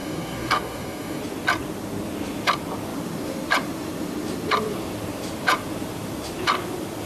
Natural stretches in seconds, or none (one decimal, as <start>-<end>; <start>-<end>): 1.2-7.1